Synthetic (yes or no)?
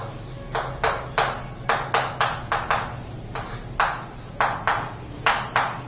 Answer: no